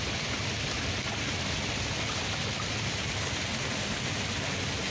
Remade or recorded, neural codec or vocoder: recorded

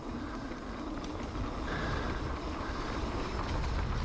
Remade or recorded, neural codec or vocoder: recorded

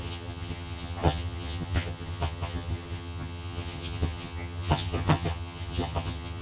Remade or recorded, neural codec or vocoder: remade, vocoder, HiFi-GAN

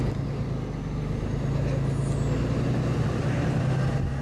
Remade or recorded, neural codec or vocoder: recorded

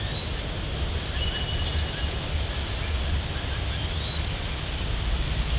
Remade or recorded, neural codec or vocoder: recorded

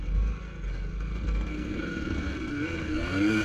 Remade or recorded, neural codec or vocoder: remade, codec, SNAC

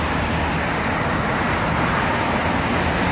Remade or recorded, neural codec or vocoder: recorded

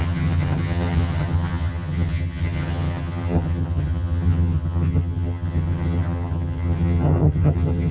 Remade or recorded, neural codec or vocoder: remade, vocoder, HiFi-GAN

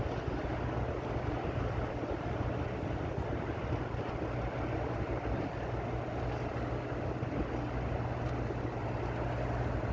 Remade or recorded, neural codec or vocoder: recorded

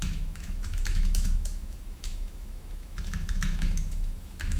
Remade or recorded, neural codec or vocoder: remade, autoencoder, DAC-VAE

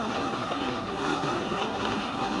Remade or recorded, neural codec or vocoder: remade, codec, SNAC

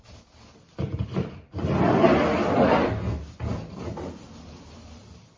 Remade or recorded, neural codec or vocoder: recorded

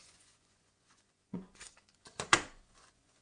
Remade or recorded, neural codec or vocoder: remade, vocoder, Vocos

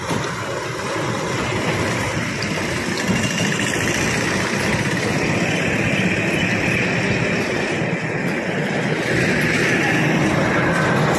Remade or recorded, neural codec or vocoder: recorded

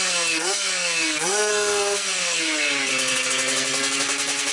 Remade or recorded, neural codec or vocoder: remade, codec, SNAC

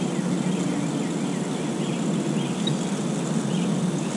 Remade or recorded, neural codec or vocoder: recorded